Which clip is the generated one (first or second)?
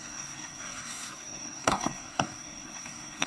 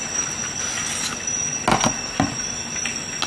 first